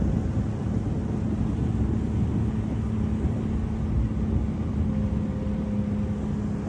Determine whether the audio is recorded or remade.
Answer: recorded